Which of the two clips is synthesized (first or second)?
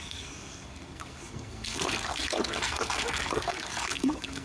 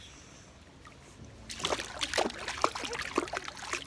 first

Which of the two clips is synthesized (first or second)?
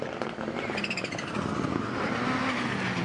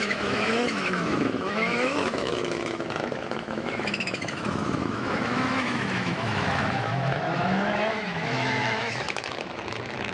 second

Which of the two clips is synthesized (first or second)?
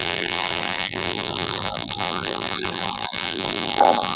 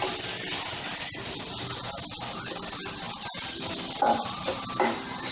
first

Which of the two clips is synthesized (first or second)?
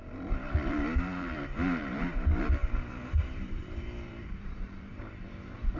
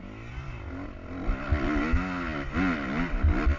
first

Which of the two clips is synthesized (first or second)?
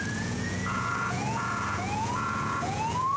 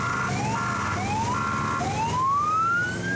first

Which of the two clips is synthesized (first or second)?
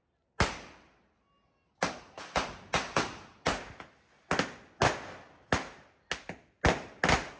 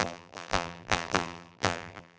second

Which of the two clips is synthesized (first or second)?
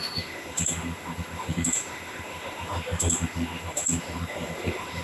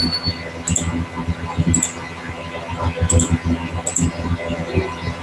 first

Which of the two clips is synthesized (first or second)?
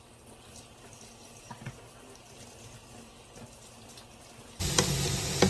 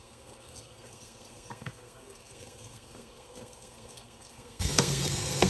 second